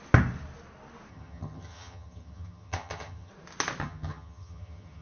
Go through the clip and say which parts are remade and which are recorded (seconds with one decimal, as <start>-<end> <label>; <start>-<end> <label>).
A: 0.0-1.1 recorded; 1.1-3.3 remade; 3.3-3.8 recorded; 3.8-5.0 remade